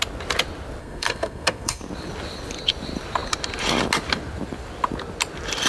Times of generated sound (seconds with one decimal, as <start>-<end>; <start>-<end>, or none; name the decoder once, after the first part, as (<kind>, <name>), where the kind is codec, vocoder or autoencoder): 0.8-1.8 (codec, SNAC)